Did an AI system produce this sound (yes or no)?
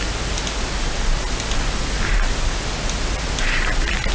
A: no